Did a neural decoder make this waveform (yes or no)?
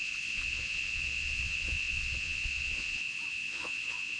yes